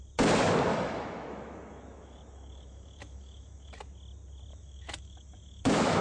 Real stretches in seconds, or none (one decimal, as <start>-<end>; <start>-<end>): 0.0-0.7; 3.8-4.5